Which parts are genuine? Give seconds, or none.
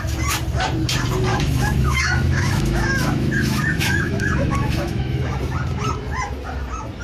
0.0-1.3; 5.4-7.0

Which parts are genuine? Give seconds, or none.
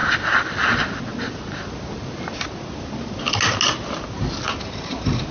0.0-5.3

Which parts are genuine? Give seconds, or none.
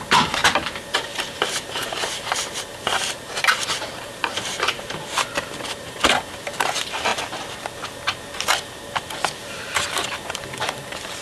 7.1-9.4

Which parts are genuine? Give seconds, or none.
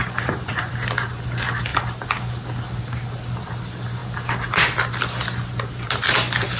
0.7-6.6